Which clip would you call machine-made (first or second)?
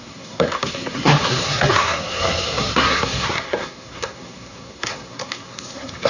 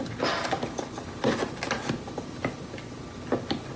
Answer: first